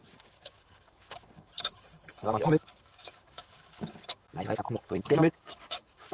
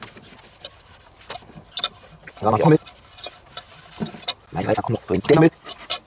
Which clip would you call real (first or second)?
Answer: second